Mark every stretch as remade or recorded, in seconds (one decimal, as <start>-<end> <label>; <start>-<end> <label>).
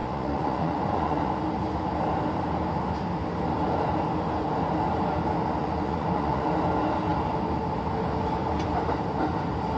0.0-1.3 remade; 1.3-5.6 recorded; 5.6-6.5 remade; 6.5-9.8 recorded